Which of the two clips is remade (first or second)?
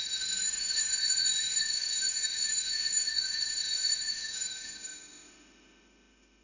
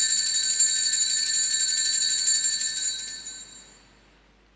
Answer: first